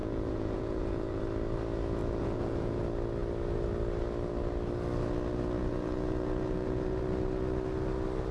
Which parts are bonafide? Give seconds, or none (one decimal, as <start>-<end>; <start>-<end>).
1.2-2.0; 2.8-5.6; 7.0-8.3